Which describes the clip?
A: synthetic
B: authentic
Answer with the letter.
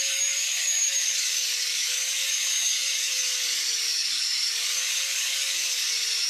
A